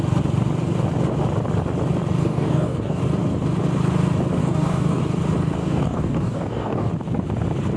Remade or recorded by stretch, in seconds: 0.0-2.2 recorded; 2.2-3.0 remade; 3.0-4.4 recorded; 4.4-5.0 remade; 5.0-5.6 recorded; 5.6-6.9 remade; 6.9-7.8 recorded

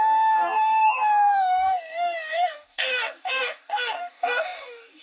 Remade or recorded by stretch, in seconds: 0.0-5.0 remade

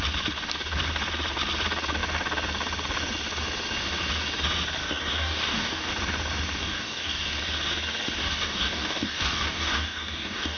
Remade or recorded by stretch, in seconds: 0.0-4.8 recorded; 4.8-5.9 remade; 5.9-6.6 recorded; 6.6-7.4 remade; 7.4-8.2 recorded; 8.2-10.6 remade

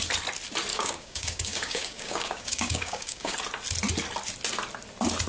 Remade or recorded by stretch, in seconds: 0.0-0.7 recorded; 0.7-3.3 remade; 3.3-5.3 recorded